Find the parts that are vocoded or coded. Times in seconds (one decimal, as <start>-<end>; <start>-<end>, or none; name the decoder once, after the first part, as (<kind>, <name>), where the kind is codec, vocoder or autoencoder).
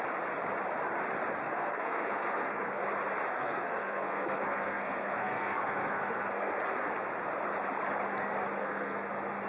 1.4-2.7 (codec, SNAC); 3.4-6.6; 8.6-9.1